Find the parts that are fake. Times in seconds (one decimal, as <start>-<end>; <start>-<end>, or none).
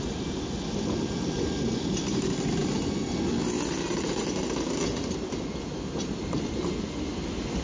none